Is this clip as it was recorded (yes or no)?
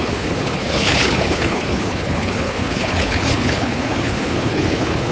no